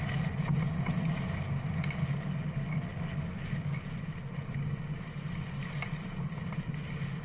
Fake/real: real